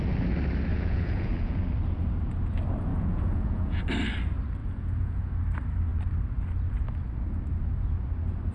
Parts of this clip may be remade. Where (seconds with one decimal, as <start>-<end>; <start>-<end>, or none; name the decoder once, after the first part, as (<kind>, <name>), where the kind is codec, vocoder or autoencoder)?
0.7-1.6 (vocoder, Vocos); 2.9-3.8; 4.6-5.3